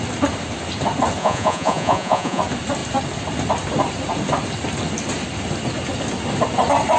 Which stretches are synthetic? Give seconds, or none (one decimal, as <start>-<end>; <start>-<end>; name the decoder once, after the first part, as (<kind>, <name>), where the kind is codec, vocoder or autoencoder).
1.2-2.4 (vocoder, Vocos)